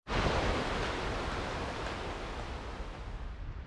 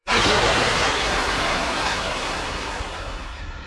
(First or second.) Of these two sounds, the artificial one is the second